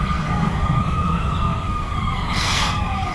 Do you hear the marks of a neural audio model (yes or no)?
yes